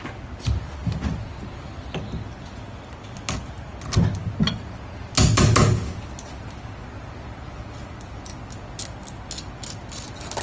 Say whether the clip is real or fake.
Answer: real